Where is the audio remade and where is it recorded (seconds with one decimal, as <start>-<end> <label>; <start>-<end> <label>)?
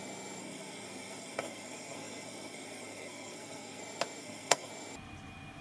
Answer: 0.0-0.4 recorded; 0.4-3.8 remade; 3.8-4.2 recorded; 4.2-4.7 remade; 4.7-5.6 recorded